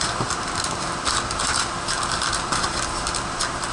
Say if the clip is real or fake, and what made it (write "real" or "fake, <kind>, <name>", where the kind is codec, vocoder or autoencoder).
real